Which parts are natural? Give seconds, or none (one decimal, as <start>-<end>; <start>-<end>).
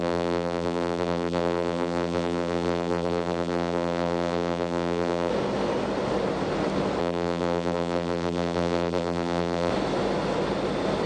5.3-7.0; 9.7-11.1